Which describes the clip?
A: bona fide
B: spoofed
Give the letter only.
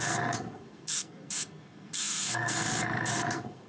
B